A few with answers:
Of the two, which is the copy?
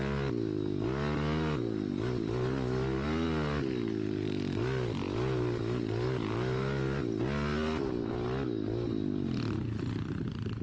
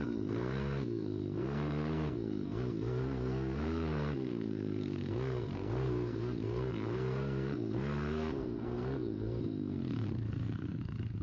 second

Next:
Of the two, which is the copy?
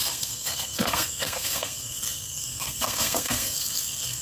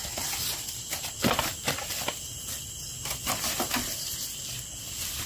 first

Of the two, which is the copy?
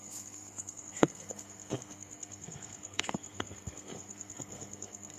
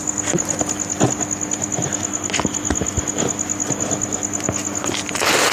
first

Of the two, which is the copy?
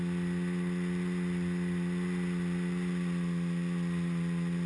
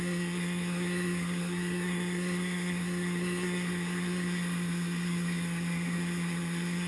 second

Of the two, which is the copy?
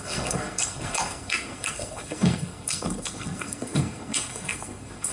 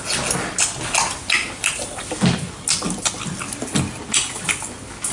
first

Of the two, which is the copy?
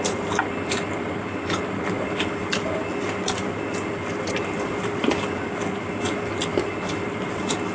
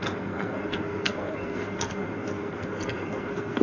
second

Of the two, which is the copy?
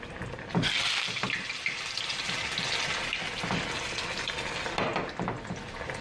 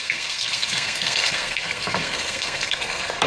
second